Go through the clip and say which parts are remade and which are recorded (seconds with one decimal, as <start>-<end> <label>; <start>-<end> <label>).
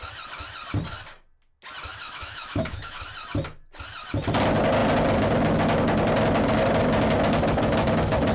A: 0.0-1.9 recorded; 1.9-3.0 remade; 3.0-8.3 recorded